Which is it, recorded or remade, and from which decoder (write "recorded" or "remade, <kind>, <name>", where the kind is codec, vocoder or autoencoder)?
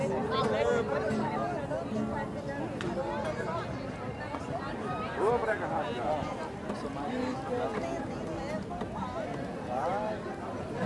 recorded